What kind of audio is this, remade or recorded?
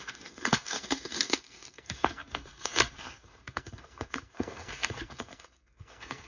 remade